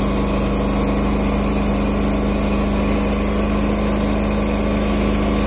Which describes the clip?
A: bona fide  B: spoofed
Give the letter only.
A